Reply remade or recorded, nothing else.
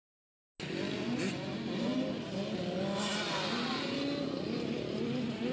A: recorded